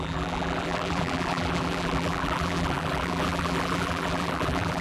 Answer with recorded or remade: remade